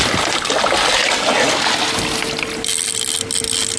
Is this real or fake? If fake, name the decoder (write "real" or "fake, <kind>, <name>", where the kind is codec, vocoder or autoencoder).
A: real